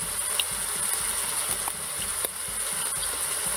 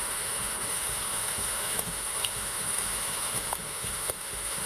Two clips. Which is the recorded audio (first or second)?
first